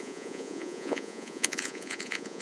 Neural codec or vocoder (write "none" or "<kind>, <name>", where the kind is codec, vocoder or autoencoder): vocoder, Vocos